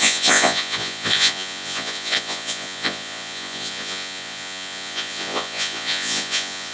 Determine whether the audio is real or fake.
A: fake